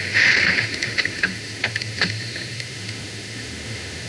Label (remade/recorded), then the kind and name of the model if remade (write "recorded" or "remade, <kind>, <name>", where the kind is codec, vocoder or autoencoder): remade, autoencoder, DAC-VAE